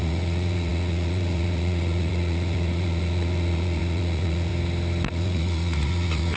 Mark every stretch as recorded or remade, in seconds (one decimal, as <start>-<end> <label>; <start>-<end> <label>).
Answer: 0.0-4.5 remade; 4.5-5.1 recorded; 5.1-6.4 remade